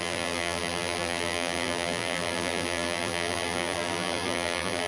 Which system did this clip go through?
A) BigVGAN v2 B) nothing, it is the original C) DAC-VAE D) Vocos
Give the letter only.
A